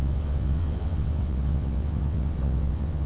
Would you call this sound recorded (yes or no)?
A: no